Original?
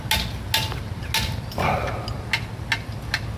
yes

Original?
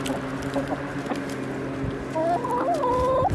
yes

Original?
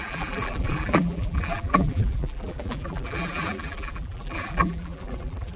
no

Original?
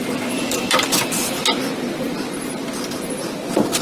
yes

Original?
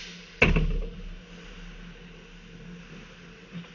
yes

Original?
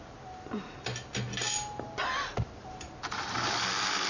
yes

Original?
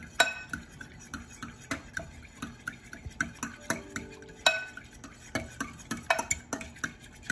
yes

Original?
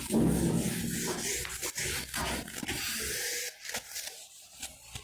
yes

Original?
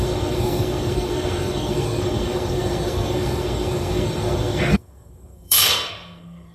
no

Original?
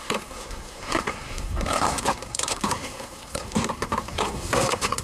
no